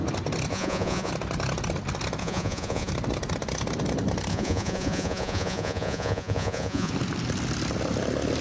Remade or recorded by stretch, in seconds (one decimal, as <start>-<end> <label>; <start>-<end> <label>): 0.0-0.5 recorded; 0.5-1.1 remade; 1.1-2.2 recorded; 2.2-2.9 remade; 2.9-4.3 recorded; 4.3-6.9 remade; 6.9-8.4 recorded